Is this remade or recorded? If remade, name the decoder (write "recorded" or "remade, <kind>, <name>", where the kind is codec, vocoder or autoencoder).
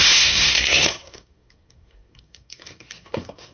remade, codec, SNAC